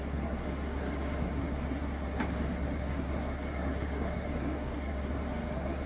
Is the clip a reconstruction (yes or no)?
yes